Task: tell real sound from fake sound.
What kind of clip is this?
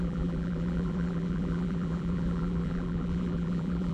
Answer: fake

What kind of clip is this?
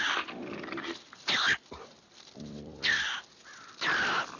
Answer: fake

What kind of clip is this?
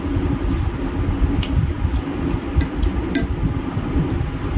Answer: real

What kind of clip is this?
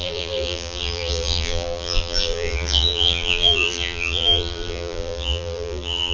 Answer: fake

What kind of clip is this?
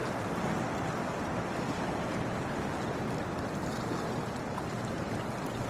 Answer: real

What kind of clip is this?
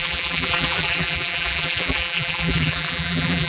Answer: fake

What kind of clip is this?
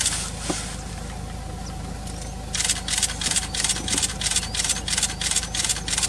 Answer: real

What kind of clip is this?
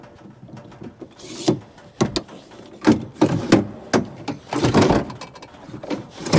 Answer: real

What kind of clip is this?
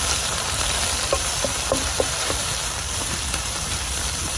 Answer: fake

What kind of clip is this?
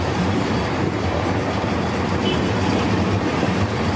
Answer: fake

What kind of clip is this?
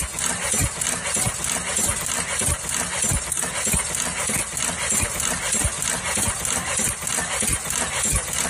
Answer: real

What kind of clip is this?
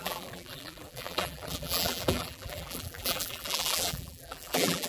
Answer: fake